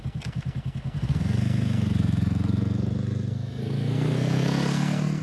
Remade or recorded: remade